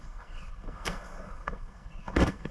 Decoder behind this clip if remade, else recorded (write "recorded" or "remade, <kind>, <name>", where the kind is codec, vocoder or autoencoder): remade, codec, SNAC